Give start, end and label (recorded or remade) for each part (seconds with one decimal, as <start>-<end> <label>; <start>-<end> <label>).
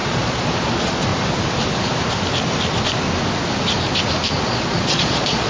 0.0-1.1 remade; 1.1-4.4 recorded; 4.4-5.5 remade